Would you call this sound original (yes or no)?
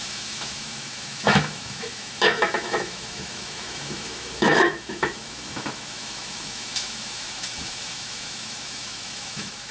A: no